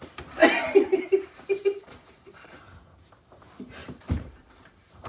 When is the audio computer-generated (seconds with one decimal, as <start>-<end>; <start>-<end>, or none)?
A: 0.4-3.1; 3.8-5.1